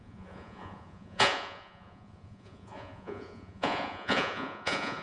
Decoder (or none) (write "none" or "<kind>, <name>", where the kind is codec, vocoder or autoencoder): vocoder, Vocos